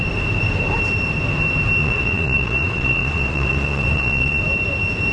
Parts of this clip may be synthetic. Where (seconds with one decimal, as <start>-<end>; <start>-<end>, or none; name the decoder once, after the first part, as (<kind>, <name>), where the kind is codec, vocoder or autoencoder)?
1.8-4.4 (vocoder, Vocos)